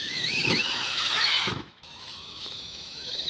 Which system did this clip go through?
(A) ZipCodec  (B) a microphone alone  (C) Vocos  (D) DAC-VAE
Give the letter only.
D